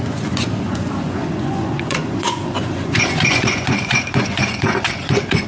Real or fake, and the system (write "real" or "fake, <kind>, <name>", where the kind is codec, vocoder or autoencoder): fake, vocoder, Vocos